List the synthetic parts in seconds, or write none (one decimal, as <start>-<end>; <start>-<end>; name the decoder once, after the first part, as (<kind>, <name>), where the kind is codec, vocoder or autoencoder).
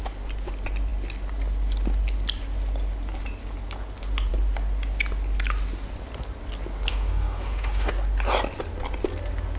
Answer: 6.9-7.9 (autoencoder, DAC-VAE)